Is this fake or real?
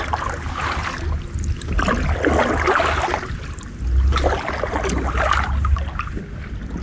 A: real